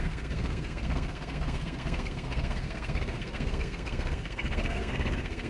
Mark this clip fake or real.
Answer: fake